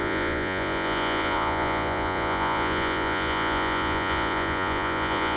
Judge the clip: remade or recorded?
remade